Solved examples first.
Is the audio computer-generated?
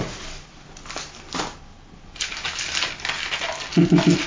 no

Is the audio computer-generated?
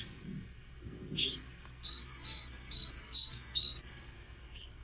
yes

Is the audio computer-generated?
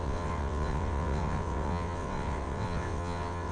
yes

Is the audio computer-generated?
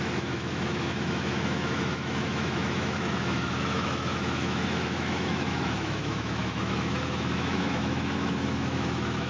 yes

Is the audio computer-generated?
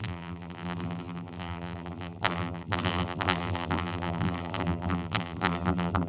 yes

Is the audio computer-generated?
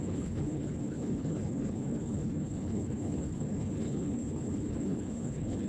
yes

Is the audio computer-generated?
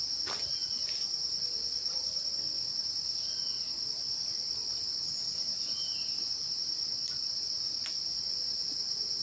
no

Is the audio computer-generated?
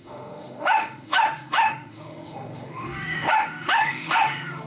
yes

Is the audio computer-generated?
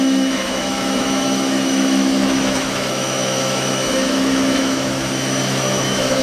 yes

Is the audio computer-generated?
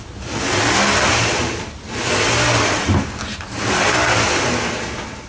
no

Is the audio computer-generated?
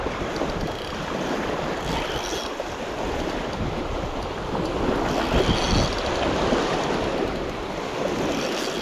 no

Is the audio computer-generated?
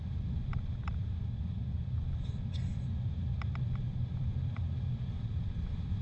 no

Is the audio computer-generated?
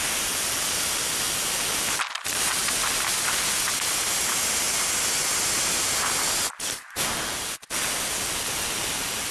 no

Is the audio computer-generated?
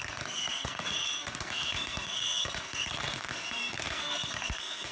yes